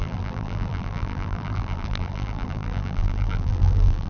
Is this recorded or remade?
remade